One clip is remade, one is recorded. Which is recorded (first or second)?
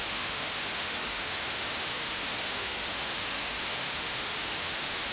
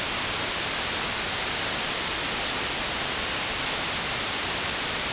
second